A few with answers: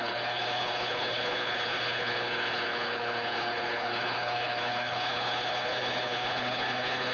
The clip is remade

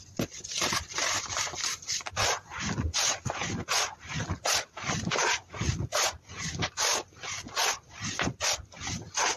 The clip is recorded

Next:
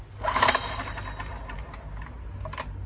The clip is recorded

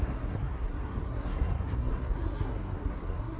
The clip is remade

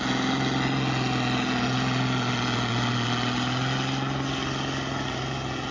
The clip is recorded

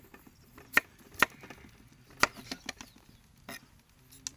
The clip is recorded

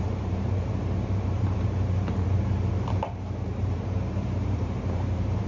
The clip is remade